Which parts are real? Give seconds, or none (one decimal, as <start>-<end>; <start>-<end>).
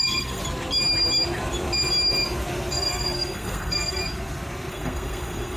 0.4-2.7; 4.0-4.7